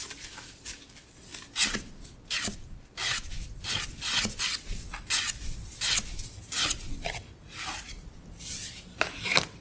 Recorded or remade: recorded